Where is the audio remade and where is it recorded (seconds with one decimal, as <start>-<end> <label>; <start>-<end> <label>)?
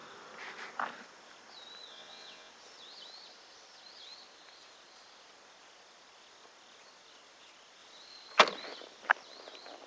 0.0-1.9 recorded; 1.9-2.5 remade; 2.5-9.9 recorded